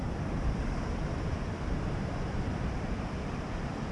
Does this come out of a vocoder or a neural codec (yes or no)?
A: yes